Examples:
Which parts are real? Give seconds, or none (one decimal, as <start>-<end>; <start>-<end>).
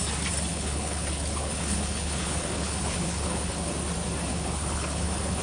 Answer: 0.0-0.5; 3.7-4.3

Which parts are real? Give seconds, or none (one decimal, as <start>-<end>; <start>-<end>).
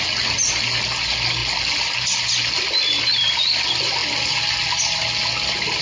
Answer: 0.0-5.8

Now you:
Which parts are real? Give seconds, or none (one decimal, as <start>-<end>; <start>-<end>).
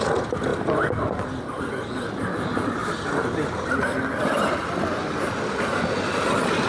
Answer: 0.0-6.7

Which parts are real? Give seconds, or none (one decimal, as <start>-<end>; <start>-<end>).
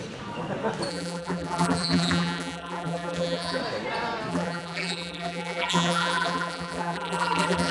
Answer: 0.0-0.9; 3.6-4.3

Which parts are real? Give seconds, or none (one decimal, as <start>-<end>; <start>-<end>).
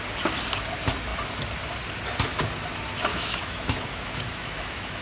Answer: 0.0-3.1